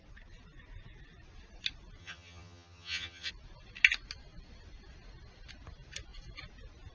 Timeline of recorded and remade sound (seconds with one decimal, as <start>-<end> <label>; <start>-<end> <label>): 0.0-2.0 recorded; 2.0-3.3 remade; 3.3-6.9 recorded